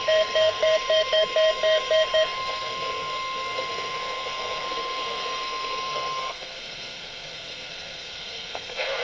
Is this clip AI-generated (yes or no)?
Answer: yes